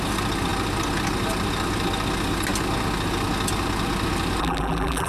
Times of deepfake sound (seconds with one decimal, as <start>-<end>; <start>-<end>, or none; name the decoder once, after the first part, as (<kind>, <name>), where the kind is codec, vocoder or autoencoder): 4.4-5.1 (vocoder, BigVGAN v2)